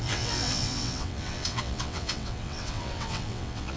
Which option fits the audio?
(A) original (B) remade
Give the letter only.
B